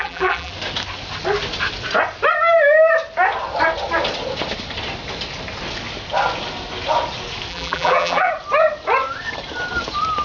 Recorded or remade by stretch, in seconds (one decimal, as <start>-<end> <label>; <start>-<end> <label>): 0.0-0.5 remade; 0.5-7.5 recorded; 7.5-8.3 remade; 8.3-10.2 recorded